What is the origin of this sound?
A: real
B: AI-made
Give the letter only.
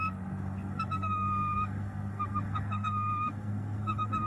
B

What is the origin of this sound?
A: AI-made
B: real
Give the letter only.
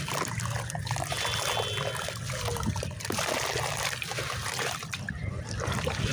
B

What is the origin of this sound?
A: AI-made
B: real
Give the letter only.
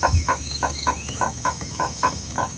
A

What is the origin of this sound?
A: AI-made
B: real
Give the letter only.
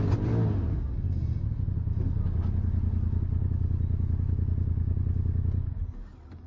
B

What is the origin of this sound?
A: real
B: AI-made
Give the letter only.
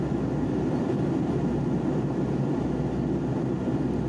A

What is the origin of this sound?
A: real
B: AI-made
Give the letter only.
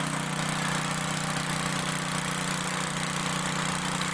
A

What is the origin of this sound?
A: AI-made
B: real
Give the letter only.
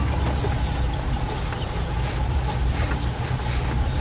B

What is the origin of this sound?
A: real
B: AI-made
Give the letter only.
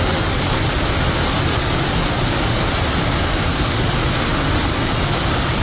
A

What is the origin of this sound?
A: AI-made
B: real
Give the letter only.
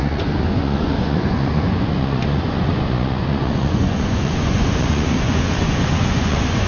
A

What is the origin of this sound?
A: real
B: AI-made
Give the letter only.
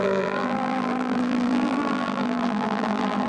B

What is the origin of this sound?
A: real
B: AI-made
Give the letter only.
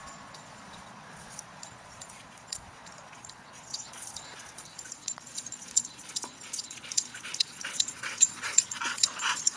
B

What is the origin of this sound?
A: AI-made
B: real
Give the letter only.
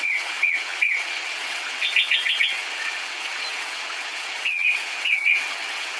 A